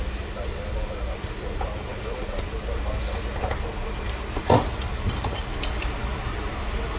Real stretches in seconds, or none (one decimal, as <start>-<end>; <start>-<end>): 1.9-4.4